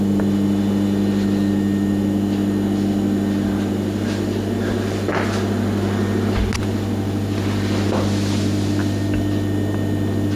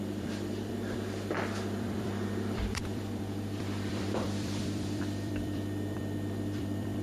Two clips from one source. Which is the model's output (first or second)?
second